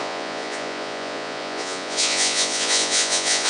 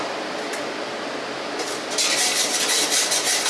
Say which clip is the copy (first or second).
first